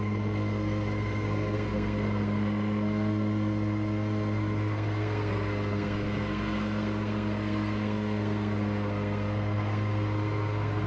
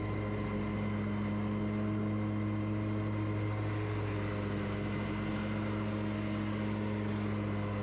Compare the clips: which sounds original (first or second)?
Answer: second